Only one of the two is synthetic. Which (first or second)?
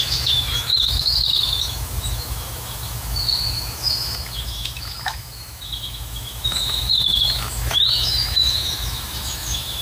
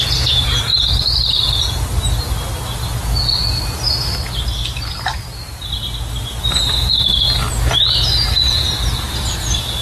first